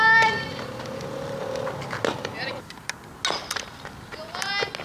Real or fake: real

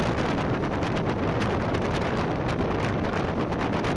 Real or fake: fake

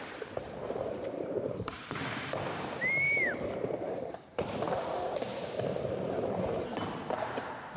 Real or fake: fake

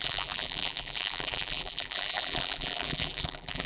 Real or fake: fake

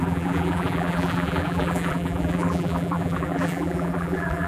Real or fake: fake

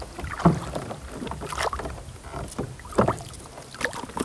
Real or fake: real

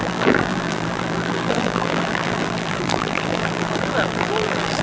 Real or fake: fake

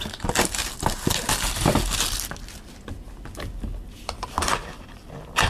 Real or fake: real